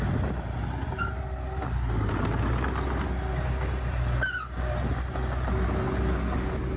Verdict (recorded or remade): recorded